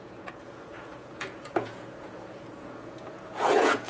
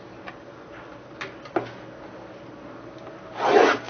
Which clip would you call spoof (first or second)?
first